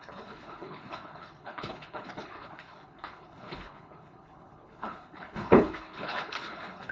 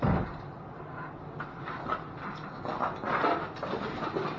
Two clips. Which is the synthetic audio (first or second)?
first